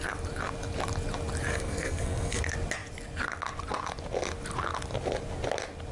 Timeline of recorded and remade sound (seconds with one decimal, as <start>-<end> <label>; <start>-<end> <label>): 0.0-1.5 recorded; 1.5-2.4 remade; 2.4-5.9 recorded